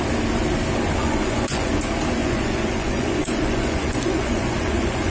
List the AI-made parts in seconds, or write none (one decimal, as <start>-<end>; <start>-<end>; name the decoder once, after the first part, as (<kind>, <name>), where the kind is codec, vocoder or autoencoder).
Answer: 1.0-1.7 (vocoder, Vocos); 2.2-5.1